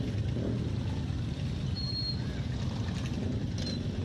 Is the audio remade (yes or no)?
no